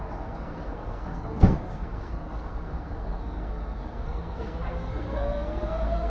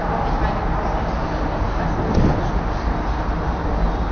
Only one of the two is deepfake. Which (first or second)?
first